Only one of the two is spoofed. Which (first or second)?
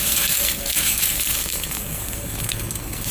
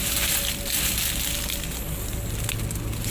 first